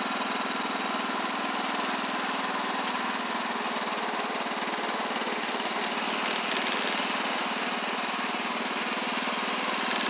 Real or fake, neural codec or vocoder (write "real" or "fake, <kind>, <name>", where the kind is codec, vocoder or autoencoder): real